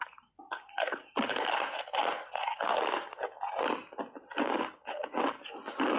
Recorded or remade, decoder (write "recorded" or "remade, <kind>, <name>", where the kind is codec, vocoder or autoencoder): recorded